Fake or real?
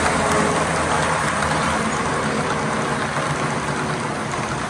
real